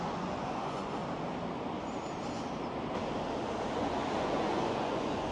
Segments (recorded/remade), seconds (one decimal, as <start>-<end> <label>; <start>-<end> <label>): 0.0-1.0 remade; 1.0-3.8 recorded; 3.8-5.3 remade